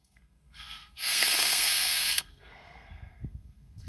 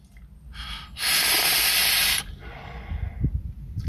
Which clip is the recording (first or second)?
second